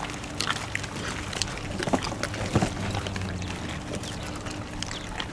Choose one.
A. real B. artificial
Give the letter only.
A